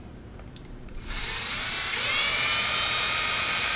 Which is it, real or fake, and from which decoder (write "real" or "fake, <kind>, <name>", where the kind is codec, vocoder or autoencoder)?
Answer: fake, vocoder, BigVGAN v2